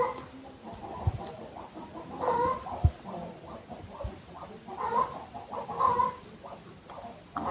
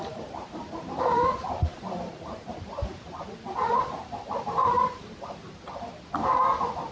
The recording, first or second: first